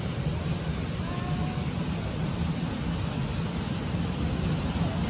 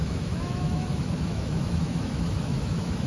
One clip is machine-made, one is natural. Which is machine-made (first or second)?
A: second